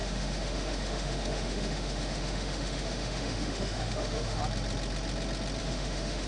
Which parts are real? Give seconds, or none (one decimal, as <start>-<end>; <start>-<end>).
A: 4.4-5.6